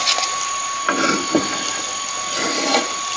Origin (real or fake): real